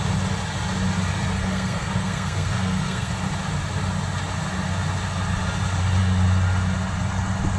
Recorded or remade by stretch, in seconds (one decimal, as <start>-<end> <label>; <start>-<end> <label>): 0.0-1.4 recorded; 1.4-3.1 remade; 3.1-7.6 recorded